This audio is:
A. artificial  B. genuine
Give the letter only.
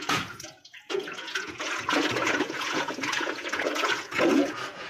A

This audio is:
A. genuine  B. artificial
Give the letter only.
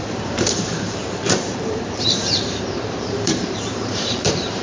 B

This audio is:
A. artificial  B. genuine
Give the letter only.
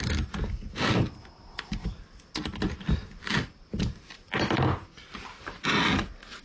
B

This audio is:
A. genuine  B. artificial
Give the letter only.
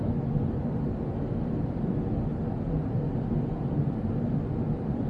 A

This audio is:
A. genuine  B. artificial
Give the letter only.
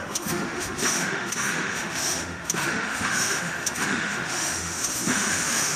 B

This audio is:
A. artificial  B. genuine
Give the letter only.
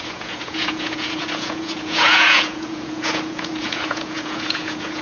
A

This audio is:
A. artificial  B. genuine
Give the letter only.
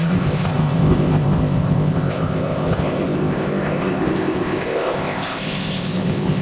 A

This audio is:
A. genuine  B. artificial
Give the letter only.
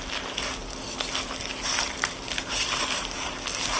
A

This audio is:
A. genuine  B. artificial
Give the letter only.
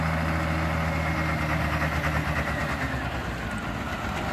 A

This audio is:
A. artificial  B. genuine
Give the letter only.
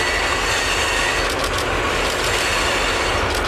B